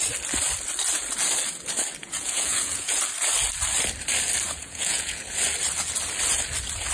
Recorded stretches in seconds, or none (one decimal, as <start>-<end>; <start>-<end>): 0.0-2.0; 3.0-4.6; 5.2-6.9